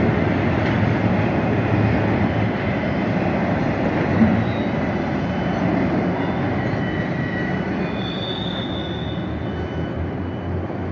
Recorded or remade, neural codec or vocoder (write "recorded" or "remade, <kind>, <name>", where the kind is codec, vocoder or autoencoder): recorded